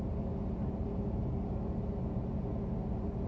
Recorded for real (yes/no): yes